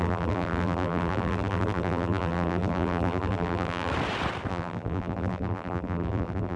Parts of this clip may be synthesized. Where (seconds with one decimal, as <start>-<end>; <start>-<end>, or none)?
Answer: 0.0-3.9; 4.5-6.6